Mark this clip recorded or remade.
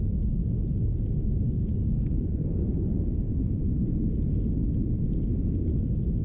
recorded